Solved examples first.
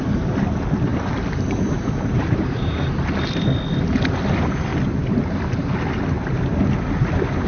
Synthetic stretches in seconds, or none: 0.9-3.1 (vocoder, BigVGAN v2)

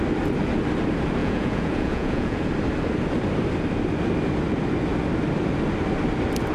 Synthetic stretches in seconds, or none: 1.2-2.4 (vocoder, Vocos)

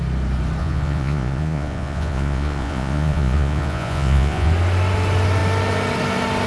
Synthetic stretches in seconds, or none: 0.6-4.5 (vocoder, Vocos)

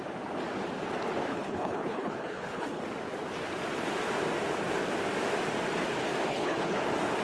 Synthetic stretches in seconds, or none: 1.3-2.8 (codec, HILCodec); 6.3-6.8

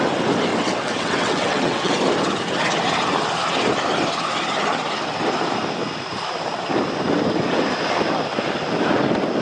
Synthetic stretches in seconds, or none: 0.5-1.9 (vocoder, WaveNeXt)

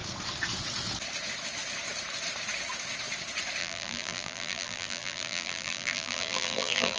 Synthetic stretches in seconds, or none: 3.6-7.0 (vocoder, BigVGAN v2)

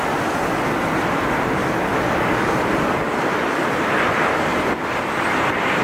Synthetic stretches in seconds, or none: 1.6-2.5 (vocoder, BigVGAN v2)

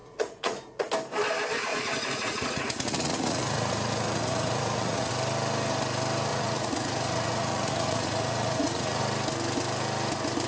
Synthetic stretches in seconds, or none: 0.0-0.9 (vocoder, Vocos); 1.7-5.1; 6.3-9.0